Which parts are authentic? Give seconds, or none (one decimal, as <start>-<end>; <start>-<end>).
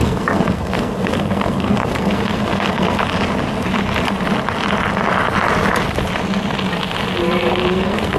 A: 3.0-7.7